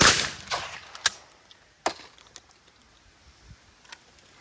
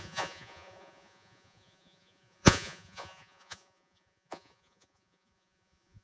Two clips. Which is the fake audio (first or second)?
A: second